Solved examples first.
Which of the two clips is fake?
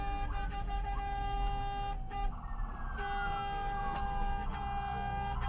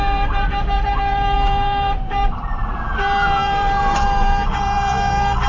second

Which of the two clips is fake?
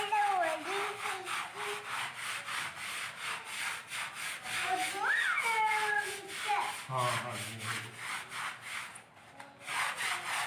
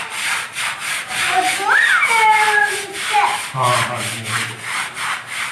second